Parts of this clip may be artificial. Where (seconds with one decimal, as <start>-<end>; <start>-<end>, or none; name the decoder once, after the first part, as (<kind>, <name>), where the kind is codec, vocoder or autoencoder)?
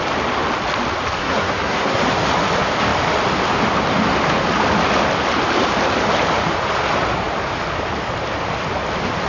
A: 1.2-2.0 (codec, SNAC)